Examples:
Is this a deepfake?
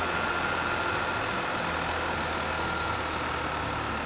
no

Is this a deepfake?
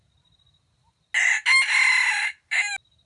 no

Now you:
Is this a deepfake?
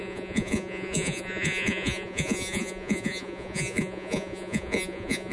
yes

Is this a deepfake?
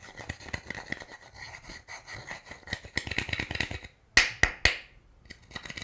no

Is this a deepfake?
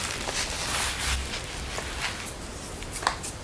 no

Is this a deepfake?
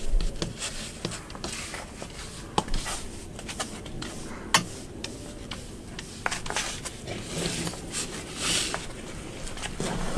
no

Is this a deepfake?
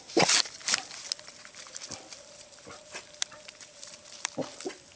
no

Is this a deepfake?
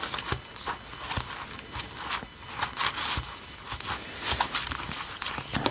no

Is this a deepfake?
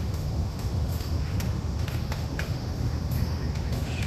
yes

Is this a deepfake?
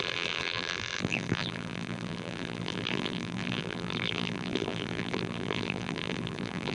yes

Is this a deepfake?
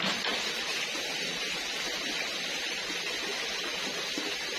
no